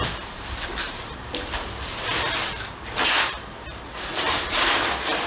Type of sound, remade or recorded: remade